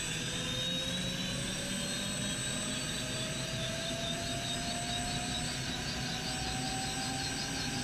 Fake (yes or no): no